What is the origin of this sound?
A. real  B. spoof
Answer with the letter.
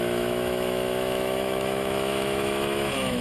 B